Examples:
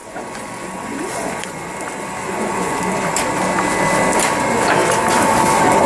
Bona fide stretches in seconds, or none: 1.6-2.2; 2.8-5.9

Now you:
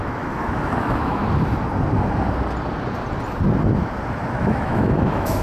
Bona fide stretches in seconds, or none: 1.2-4.4

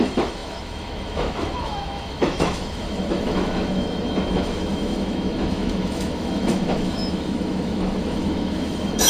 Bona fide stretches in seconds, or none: none

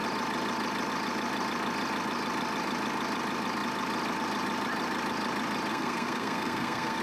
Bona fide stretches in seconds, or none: 0.0-5.7

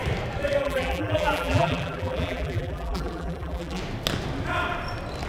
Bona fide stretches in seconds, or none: 0.0-0.6; 3.8-5.3